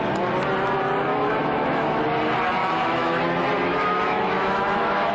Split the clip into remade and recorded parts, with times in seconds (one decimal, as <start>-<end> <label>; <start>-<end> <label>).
0.0-1.1 recorded; 1.1-2.0 remade; 2.0-2.6 recorded; 2.6-3.2 remade; 3.2-3.7 recorded; 3.7-5.1 remade